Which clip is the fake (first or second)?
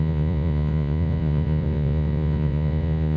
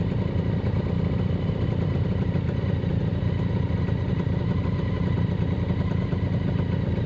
first